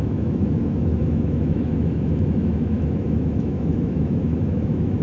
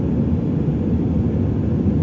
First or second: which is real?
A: second